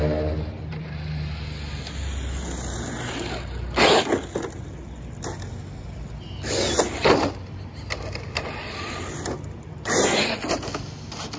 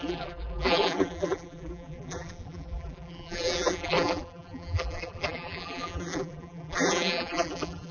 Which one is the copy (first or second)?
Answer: second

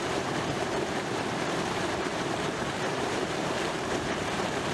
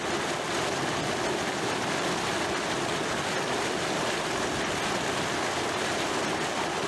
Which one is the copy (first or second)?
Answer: first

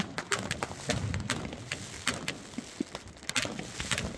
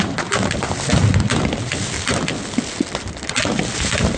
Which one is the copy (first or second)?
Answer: second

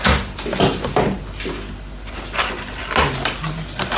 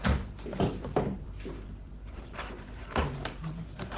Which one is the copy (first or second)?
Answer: second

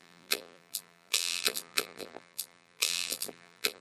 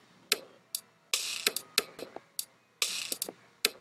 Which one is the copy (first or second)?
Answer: first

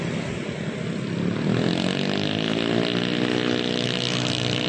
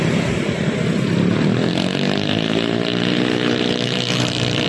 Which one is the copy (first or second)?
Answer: second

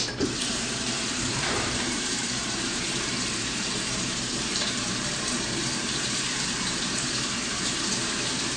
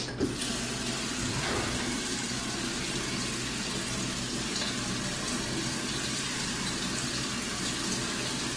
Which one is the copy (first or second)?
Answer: first